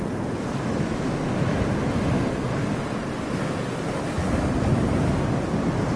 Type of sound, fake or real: real